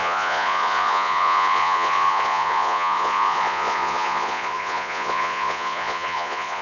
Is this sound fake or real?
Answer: fake